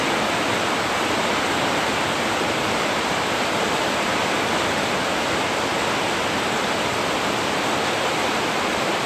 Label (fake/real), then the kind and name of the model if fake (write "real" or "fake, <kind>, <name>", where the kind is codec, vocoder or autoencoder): real